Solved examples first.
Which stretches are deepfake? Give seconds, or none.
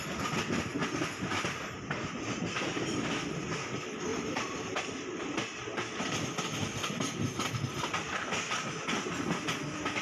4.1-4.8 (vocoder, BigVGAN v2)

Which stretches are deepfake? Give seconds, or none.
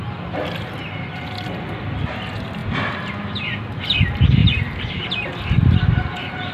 4.4-5.0 (vocoder, BigVGAN v2)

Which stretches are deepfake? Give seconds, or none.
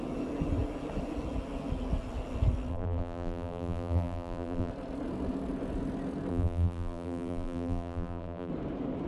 2.7-4.7 (vocoder, BigVGAN v2); 6.3-8.5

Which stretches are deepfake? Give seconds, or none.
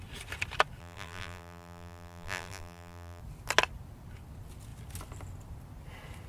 0.8-3.2 (vocoder, BigVGAN v2)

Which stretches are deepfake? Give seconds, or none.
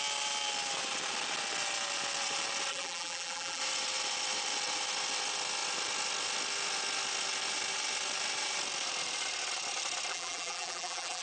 2.7-3.6 (vocoder, BigVGAN v2); 10.1-11.2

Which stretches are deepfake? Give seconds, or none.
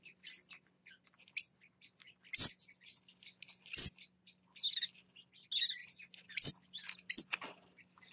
none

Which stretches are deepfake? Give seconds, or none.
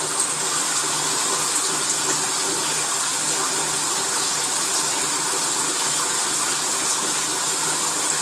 none